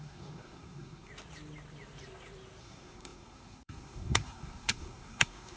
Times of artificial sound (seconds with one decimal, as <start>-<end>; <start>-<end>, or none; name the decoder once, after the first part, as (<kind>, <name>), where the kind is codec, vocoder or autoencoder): 0.0-1.1 (codec, SNAC); 2.6-5.6